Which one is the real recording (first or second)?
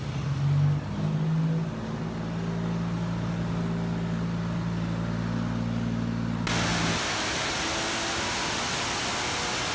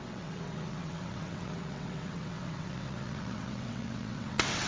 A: first